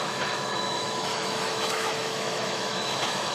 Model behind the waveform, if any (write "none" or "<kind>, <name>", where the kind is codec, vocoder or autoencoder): autoencoder, DAC-VAE